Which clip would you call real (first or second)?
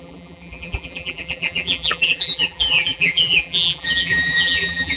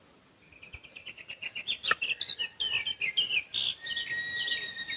second